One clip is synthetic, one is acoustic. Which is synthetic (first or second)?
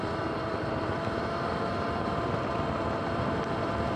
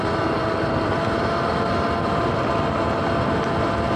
first